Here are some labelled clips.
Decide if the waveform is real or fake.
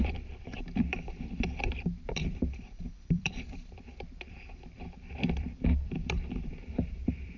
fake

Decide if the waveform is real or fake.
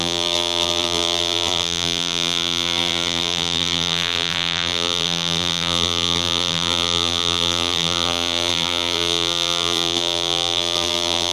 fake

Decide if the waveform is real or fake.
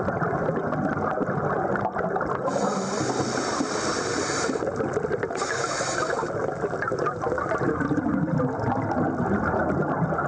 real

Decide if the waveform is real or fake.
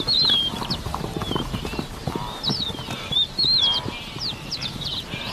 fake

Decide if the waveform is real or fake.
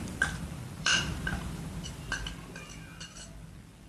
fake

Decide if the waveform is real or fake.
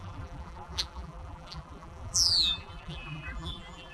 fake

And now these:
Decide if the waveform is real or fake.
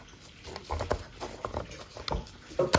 real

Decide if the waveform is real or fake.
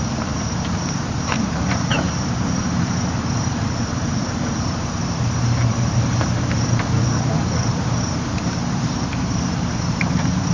fake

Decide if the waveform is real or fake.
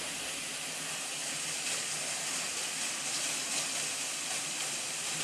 real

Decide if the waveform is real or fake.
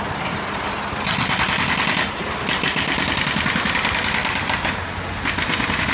real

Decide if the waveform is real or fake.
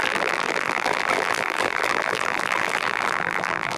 fake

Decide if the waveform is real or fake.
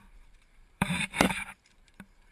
fake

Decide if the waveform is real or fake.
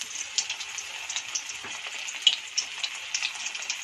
fake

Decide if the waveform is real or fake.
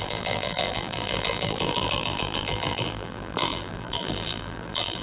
fake